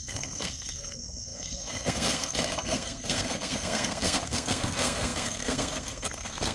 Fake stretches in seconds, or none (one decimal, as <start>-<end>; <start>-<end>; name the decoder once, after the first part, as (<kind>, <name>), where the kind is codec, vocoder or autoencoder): 0.0-6.5 (codec, SNAC)